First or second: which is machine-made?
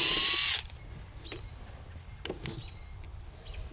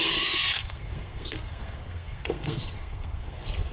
second